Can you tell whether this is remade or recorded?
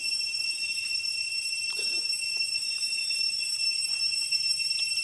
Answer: recorded